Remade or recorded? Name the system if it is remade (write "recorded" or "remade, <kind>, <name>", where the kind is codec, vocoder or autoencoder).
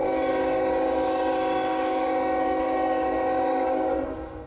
remade, codec, DAC